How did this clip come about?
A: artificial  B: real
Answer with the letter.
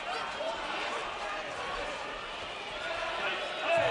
A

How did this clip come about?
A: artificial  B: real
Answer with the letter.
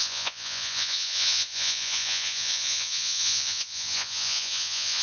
A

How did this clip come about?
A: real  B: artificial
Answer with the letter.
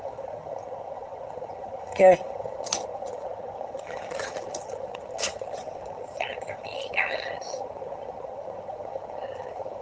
B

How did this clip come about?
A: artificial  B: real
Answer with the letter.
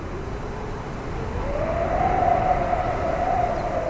B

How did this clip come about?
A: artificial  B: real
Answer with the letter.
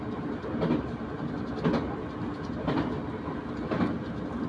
B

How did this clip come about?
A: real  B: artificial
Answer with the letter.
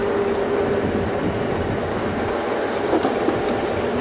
A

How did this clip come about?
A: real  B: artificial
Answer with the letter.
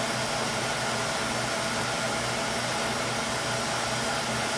A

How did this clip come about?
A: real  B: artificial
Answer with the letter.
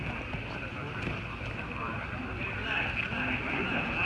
A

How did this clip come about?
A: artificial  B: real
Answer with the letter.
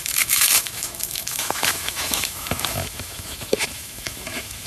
A